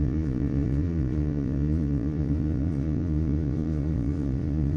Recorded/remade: remade